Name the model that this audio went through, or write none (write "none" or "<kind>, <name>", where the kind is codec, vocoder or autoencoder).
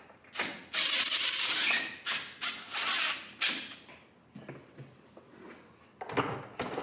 none